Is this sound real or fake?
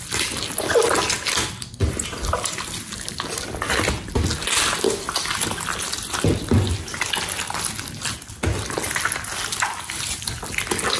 real